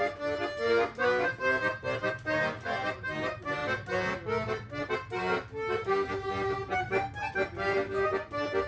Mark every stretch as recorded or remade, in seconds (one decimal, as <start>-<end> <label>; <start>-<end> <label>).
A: 0.0-8.7 recorded

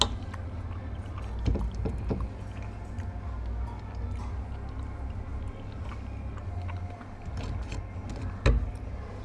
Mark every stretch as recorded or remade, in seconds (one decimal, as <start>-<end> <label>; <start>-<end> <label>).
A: 0.0-9.2 recorded

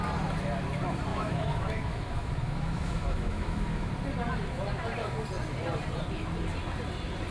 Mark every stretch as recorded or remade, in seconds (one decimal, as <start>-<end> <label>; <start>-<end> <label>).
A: 0.0-1.1 recorded; 1.1-3.9 remade; 3.9-7.3 recorded

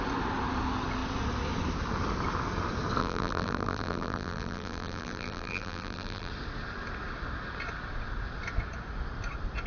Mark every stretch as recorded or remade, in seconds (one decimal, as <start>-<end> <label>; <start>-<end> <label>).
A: 0.0-3.0 recorded; 3.0-6.3 remade; 6.3-9.7 recorded

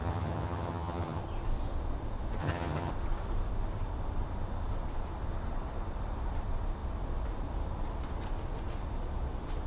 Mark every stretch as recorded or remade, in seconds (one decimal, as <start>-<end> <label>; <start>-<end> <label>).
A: 0.0-1.2 remade; 1.2-2.4 recorded; 2.4-2.9 remade; 2.9-9.7 recorded

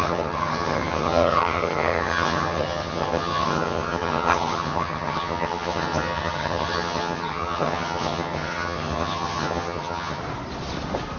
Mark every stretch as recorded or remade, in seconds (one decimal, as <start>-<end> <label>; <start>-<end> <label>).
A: 0.0-10.2 remade; 10.2-11.2 recorded

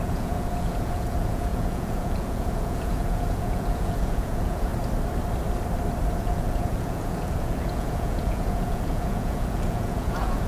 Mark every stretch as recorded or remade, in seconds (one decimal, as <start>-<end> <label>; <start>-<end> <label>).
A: 0.0-4.7 remade; 4.7-6.1 recorded; 6.1-10.5 remade

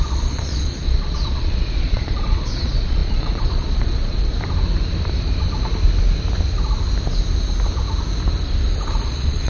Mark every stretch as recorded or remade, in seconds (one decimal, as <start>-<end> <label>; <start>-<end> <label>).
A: 0.0-4.3 remade; 4.3-9.1 recorded; 9.1-9.5 remade